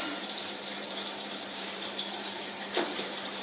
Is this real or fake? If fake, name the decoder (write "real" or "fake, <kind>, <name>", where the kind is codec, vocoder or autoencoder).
fake, vocoder, BigVGAN v2